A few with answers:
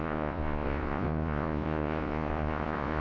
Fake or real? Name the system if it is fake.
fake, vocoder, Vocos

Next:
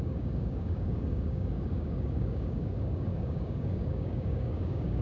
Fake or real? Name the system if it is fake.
fake, codec, DAC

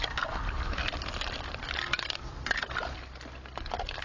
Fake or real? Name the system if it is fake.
real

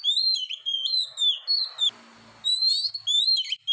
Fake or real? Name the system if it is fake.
real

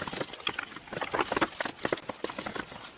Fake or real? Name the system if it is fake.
real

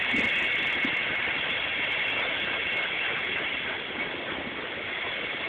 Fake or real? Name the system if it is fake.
real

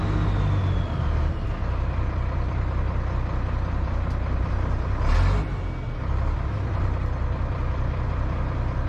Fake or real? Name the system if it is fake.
real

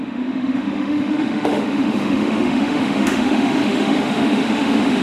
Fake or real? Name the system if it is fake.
fake, autoencoder, DAC-VAE